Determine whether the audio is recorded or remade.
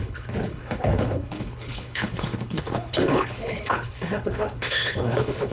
remade